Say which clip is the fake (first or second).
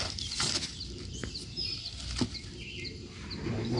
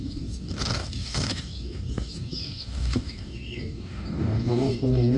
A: second